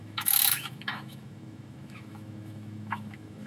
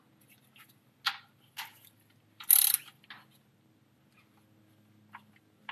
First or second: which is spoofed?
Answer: first